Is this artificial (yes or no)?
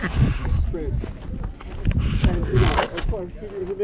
no